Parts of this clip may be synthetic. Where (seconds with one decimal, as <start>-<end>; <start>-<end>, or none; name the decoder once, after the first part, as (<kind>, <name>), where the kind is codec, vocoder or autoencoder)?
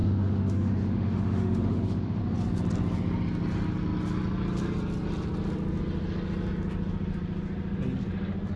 0.0-2.2 (autoencoder, DAC-VAE)